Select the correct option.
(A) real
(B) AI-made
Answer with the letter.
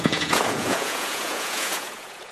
B